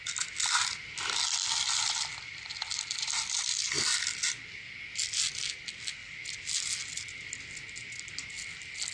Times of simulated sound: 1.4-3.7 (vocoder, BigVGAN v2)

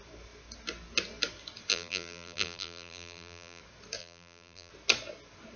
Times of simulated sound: 1.7-3.6 (vocoder, BigVGAN v2); 4.0-4.7